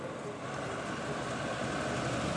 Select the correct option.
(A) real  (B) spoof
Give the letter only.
A